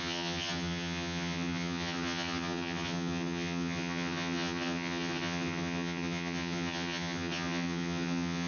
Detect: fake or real fake